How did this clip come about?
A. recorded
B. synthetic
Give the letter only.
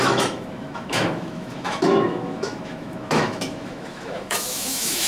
B